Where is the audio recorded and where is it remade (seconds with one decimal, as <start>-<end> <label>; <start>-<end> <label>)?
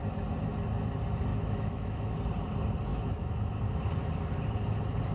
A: 0.0-1.3 recorded; 1.3-2.2 remade; 2.2-2.9 recorded; 2.9-3.5 remade; 3.5-5.1 recorded